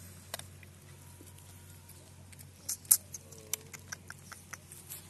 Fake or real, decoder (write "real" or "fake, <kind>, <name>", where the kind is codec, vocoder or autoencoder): real